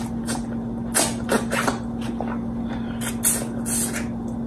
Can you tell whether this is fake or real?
real